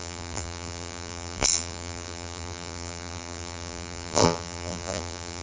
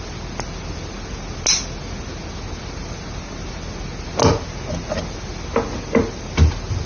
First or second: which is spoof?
first